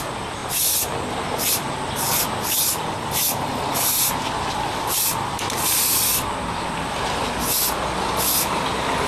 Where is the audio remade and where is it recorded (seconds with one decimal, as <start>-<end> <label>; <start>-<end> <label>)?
0.0-9.1 recorded